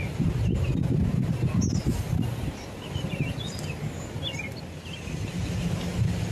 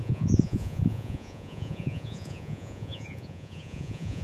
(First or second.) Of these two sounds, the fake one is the second